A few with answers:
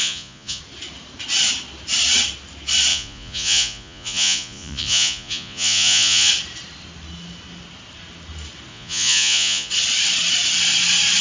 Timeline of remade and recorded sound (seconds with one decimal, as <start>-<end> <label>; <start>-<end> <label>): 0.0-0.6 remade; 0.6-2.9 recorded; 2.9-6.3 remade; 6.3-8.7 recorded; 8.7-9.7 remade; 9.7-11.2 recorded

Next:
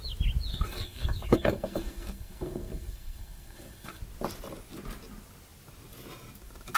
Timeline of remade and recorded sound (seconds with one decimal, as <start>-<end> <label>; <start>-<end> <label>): 0.0-0.5 recorded; 0.5-4.0 remade; 4.0-6.8 recorded

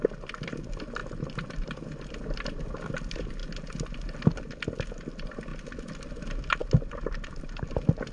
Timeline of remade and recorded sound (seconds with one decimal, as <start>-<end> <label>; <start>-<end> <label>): 0.0-8.1 recorded

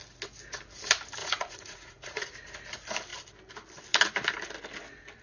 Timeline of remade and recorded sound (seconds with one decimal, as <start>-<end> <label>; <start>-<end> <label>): 0.0-1.2 recorded; 1.2-2.3 remade; 2.3-5.2 recorded

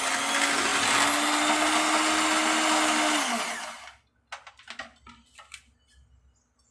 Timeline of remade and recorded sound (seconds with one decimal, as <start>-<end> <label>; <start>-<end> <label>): 0.0-6.7 recorded

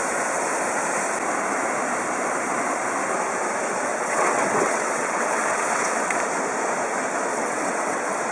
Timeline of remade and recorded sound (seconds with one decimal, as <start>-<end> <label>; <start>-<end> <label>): 0.0-3.9 recorded; 3.9-6.2 remade; 6.2-7.3 recorded; 7.3-8.3 remade

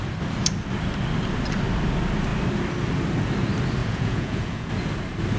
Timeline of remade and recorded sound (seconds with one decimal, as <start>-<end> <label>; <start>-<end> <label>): 0.0-3.8 recorded; 3.8-4.7 remade; 4.7-5.4 recorded

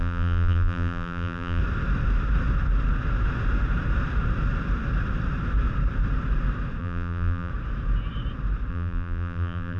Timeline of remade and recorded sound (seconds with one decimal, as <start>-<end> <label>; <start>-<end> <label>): 0.0-1.6 remade; 1.6-6.8 recorded; 6.8-7.5 remade; 7.5-8.7 recorded; 8.7-9.8 remade